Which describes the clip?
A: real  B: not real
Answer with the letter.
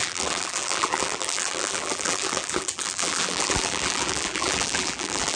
B